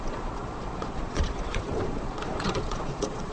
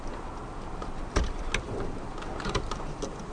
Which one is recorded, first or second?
second